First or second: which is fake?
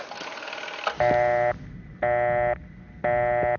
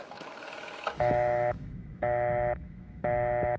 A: second